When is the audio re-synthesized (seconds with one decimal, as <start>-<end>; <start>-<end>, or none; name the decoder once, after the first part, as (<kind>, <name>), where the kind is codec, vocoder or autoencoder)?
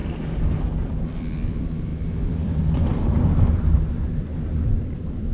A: 0.7-4.3 (vocoder, BigVGAN v2); 4.8-5.3